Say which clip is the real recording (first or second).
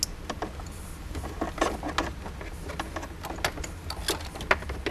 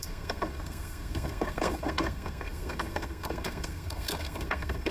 first